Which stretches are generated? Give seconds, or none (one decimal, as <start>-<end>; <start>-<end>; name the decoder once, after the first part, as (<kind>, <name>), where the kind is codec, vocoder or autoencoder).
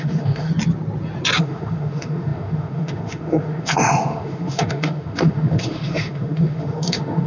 0.0-0.5 (autoencoder, DAC-VAE); 1.4-7.3